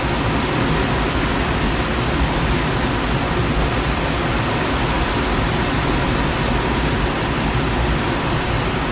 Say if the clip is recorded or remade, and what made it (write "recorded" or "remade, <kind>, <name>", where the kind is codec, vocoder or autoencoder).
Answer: recorded